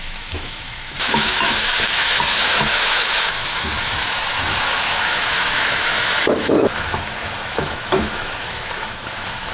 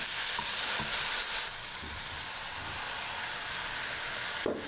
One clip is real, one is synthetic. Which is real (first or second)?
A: second